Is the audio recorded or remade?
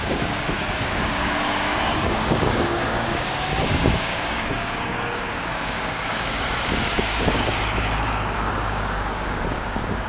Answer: remade